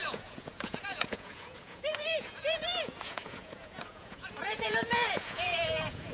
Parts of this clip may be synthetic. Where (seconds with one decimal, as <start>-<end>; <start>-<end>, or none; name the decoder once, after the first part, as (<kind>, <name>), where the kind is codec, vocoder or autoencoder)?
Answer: 0.0-6.1 (vocoder, Vocos)